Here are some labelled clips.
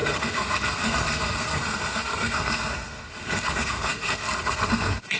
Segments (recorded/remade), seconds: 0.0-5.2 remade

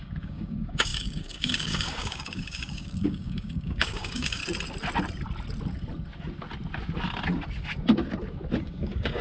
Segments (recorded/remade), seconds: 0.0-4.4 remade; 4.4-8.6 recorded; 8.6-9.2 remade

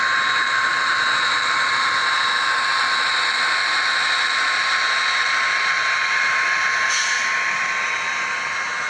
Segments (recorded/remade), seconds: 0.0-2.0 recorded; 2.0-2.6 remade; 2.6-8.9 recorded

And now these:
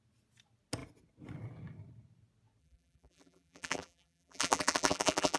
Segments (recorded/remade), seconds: 0.0-2.6 recorded; 2.6-5.4 remade